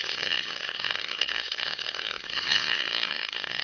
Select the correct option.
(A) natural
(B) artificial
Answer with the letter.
B